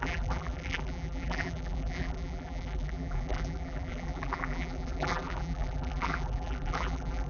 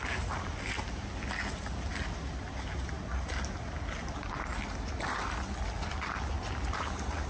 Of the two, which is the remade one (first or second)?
first